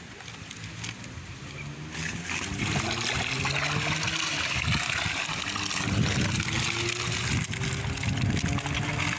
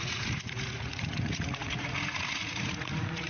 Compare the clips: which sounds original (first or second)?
first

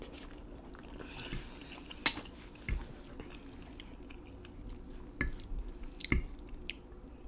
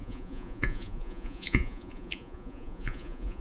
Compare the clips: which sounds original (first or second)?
first